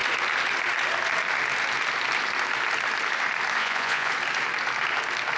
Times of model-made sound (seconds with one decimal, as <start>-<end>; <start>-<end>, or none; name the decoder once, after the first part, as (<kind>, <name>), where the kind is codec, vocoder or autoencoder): 3.6-4.1 (vocoder, Vocos)